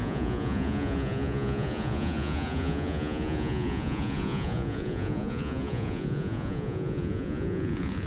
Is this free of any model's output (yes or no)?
no